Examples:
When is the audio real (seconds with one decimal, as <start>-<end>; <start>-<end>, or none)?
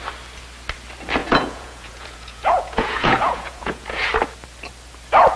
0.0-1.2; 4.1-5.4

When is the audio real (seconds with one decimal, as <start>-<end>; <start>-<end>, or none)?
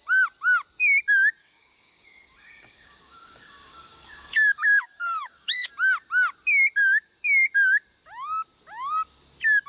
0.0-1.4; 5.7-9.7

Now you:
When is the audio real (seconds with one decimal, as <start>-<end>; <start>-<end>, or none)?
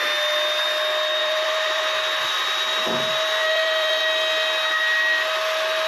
0.0-1.2; 1.8-3.4; 4.0-5.9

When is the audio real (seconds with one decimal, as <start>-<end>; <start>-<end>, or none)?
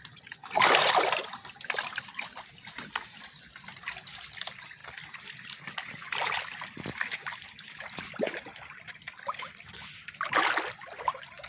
0.0-11.5